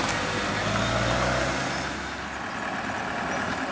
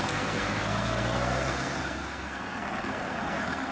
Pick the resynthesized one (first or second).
second